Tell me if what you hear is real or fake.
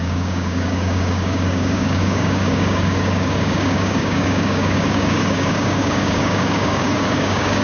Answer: fake